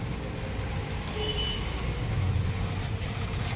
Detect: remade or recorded recorded